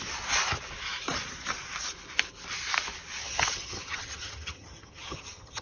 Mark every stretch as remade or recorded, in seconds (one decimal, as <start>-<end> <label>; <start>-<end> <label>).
0.0-3.2 recorded; 3.2-5.6 remade